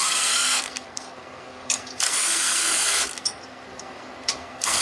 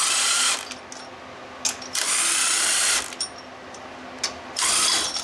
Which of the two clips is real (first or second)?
second